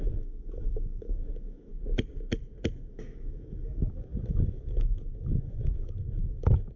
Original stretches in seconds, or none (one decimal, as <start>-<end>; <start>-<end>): 1.7-2.9